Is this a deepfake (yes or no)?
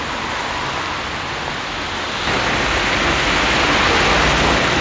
no